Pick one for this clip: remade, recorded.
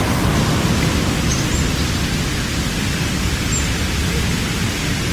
recorded